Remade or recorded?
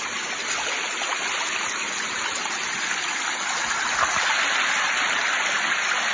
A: recorded